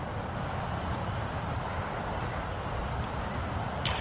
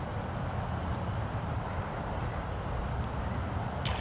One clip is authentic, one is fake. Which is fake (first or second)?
first